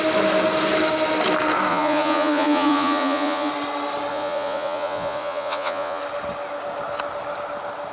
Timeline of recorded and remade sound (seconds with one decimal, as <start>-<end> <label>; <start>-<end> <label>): 0.0-1.7 recorded; 1.7-3.5 remade; 3.5-4.1 recorded; 4.1-6.0 remade; 6.0-7.9 recorded